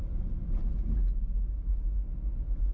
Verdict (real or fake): real